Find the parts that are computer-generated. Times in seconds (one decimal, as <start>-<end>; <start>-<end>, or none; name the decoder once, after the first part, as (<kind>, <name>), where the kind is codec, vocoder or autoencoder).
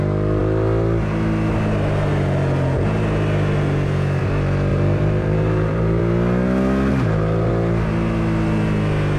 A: 4.7-6.0 (vocoder, BigVGAN v2); 6.9-7.5